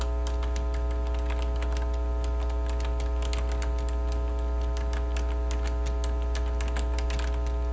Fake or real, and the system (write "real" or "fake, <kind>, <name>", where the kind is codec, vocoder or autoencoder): real